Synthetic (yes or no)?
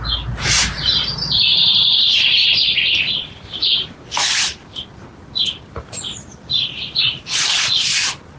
no